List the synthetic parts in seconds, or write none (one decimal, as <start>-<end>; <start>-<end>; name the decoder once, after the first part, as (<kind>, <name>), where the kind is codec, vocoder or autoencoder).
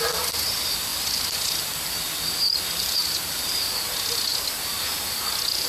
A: none